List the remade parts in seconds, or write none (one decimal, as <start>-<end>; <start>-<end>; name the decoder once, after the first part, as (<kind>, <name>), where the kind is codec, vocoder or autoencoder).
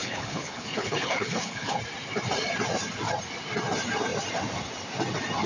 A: 0.0-1.8 (codec, HILCodec)